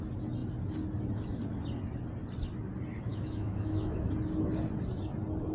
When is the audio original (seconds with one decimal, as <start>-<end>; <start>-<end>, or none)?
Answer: 0.0-3.1; 4.1-5.5

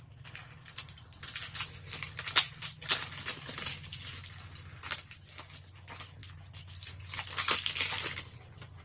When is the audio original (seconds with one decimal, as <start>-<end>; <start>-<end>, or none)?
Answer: 0.0-8.8